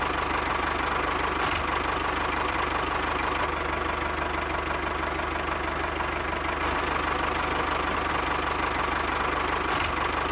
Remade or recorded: recorded